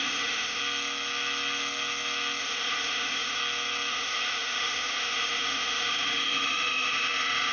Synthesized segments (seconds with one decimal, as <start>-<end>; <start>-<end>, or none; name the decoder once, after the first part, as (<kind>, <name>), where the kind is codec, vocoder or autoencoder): 0.0-0.6 (autoencoder, DAC-VAE); 2.4-3.4; 3.9-7.5